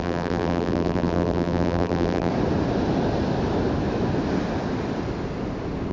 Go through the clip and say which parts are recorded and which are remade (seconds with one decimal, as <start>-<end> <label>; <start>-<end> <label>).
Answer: 0.0-2.3 remade; 2.3-5.9 recorded